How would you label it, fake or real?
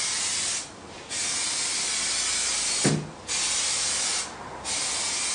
real